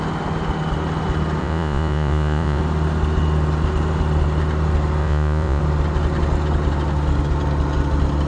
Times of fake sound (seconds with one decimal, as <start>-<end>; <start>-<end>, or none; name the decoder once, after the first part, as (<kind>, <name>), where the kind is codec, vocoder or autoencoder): 1.4-2.6 (vocoder, Vocos); 5.0-5.6